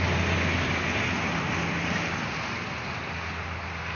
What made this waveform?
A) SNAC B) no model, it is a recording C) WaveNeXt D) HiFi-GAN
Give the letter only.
B